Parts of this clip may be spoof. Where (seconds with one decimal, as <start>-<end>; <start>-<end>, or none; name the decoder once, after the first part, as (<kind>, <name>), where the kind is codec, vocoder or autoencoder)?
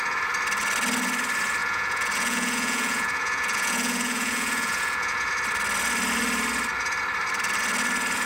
1.6-5.3 (vocoder, Vocos)